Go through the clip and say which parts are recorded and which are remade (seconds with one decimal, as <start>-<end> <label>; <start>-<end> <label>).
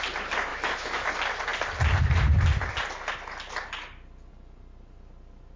0.0-0.5 recorded; 0.5-1.1 remade; 1.1-5.6 recorded